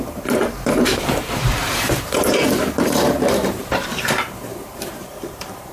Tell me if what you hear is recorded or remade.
remade